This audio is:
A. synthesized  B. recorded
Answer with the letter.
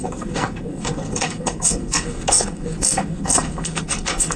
A